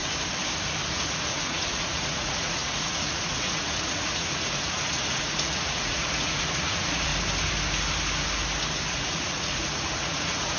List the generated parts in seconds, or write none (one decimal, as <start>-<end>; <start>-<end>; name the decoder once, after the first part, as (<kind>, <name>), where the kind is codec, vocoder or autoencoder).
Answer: 0.9-7.1 (vocoder, Vocos); 8.9-10.6